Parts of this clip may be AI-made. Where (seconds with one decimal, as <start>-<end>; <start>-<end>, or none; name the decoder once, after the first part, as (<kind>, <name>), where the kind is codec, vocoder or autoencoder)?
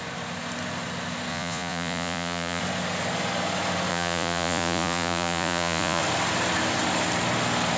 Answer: 1.3-2.6 (vocoder, Vocos); 3.9-6.0